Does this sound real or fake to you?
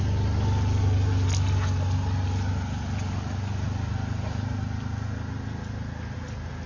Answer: real